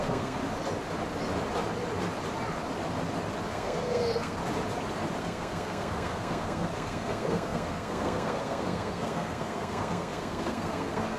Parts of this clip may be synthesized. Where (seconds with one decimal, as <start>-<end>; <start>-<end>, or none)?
0.0-0.4; 3.5-4.4; 5.2-11.2

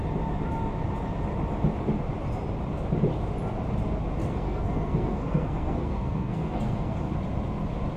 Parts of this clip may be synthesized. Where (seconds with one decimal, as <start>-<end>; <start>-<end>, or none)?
4.2-7.1

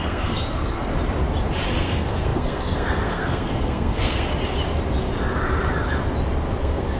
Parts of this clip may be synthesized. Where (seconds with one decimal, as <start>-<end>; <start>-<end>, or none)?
0.0-0.9; 1.7-4.3; 6.6-7.0

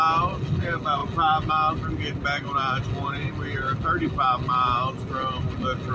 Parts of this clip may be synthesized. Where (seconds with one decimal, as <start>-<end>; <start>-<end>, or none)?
none